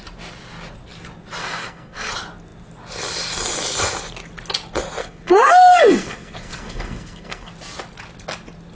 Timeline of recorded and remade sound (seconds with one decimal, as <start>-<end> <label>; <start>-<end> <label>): 0.0-1.4 recorded; 1.4-2.1 remade; 2.1-5.0 recorded; 5.0-7.5 remade; 7.5-8.7 recorded